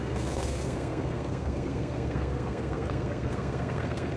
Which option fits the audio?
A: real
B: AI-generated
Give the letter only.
B